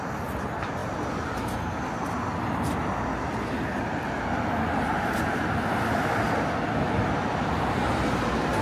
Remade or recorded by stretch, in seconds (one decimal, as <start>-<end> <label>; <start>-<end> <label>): 0.0-0.8 recorded; 0.8-1.7 remade; 1.7-8.6 recorded